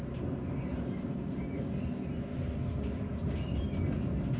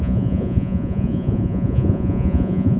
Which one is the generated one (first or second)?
second